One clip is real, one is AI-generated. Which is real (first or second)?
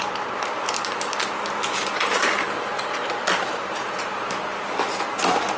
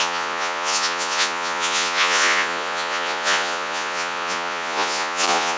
first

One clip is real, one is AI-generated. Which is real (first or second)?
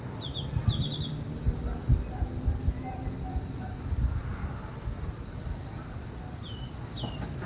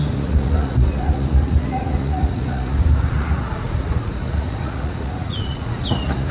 first